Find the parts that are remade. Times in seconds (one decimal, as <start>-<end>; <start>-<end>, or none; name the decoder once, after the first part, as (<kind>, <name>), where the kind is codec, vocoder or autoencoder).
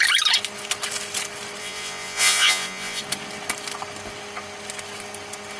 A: 1.6-3.0 (vocoder, Vocos)